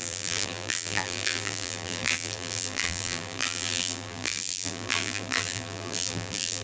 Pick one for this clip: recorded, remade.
remade